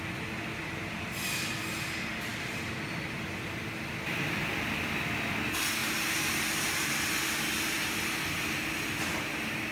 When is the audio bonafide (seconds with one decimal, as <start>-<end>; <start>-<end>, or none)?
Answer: 0.0-9.7